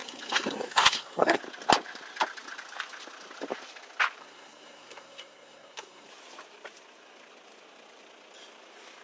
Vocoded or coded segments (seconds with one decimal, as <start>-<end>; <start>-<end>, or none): 0.0-1.4; 4.2-6.1